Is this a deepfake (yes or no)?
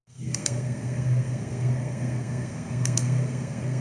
yes